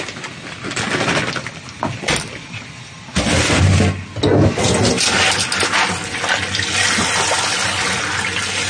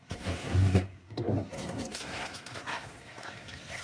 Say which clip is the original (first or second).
first